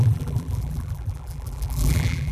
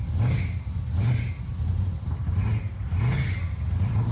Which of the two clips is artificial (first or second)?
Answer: first